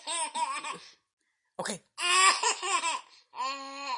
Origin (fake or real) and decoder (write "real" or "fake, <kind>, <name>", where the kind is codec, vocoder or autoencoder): real